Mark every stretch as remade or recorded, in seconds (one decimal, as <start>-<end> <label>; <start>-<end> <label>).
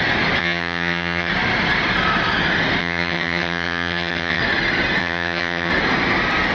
0.0-0.4 recorded; 0.4-1.3 remade; 1.3-2.8 recorded; 2.8-4.4 remade; 4.4-5.0 recorded; 5.0-5.7 remade; 5.7-6.5 recorded